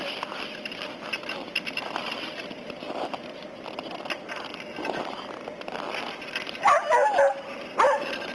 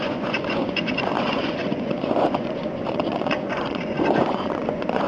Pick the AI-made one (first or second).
second